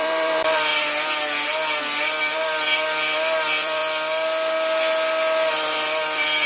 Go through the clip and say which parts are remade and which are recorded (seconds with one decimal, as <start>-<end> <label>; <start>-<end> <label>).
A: 0.0-0.7 remade; 0.7-2.2 recorded; 2.2-3.8 remade; 3.8-5.5 recorded; 5.5-6.5 remade